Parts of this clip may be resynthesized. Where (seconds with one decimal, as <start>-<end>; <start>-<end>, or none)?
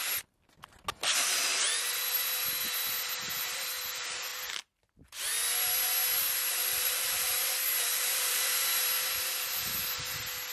6.6-7.1